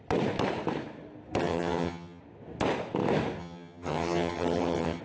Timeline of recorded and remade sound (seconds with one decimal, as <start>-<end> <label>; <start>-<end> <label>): 0.0-1.4 recorded; 1.4-2.2 remade; 2.2-3.4 recorded; 3.4-5.0 remade